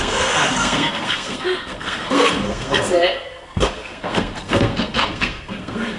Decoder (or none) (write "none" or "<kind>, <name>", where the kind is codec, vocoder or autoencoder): codec, SNAC